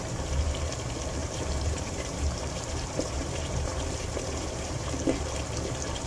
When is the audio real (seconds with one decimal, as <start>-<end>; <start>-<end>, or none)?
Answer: 0.0-1.2; 4.9-6.1